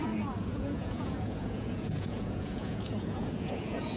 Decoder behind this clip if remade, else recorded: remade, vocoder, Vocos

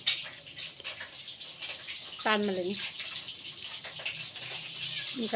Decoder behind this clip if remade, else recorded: recorded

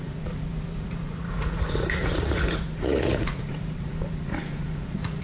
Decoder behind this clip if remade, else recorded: remade, vocoder, Vocos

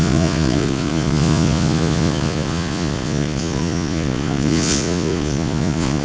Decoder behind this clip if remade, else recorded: remade, vocoder, Vocos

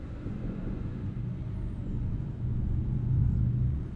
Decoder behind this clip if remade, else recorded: remade, vocoder, Vocos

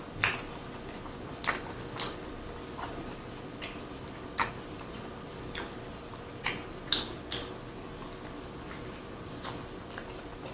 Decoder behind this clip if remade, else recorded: recorded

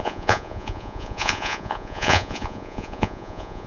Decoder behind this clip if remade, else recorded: remade, vocoder, Vocos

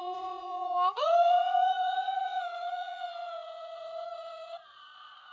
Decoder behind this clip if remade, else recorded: remade, vocoder, Vocos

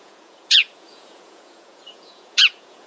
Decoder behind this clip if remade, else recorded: remade, vocoder, Vocos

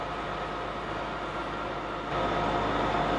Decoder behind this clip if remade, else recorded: recorded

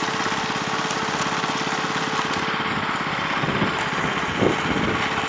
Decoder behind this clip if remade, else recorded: recorded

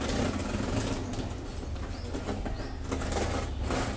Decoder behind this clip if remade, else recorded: recorded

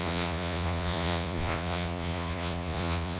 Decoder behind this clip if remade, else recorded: remade, vocoder, Vocos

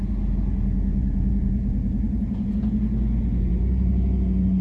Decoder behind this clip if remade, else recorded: remade, vocoder, Vocos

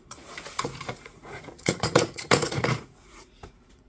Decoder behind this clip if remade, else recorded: remade, vocoder, Vocos